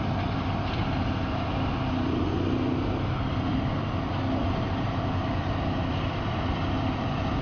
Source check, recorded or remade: recorded